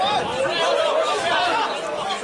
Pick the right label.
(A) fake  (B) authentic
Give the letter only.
B